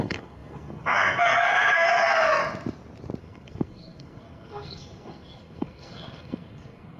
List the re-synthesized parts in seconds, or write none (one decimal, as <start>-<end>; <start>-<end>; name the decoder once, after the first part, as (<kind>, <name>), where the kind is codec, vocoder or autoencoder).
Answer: 0.0-2.4 (codec, SNAC); 3.2-7.0